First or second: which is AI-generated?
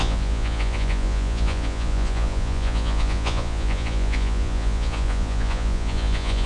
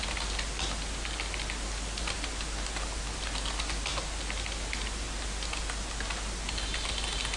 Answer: first